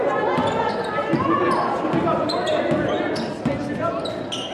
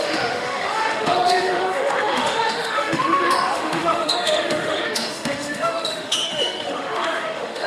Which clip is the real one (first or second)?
first